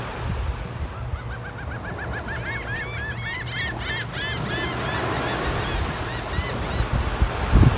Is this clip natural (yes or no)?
yes